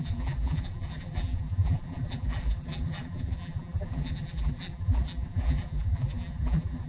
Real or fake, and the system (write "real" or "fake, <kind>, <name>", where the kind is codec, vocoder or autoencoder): fake, vocoder, BigVGAN v2